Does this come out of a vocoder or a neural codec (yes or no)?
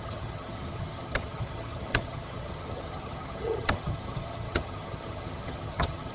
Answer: yes